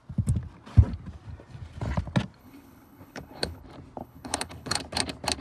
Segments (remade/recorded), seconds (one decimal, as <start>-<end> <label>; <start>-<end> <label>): 0.0-2.4 recorded; 2.4-3.6 remade; 3.6-4.0 recorded; 4.0-4.8 remade; 4.8-5.4 recorded